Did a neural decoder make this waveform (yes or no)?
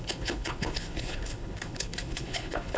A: yes